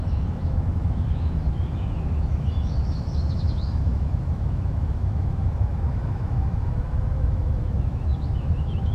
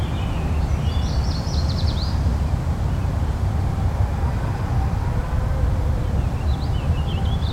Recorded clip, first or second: second